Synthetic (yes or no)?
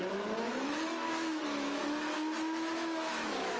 yes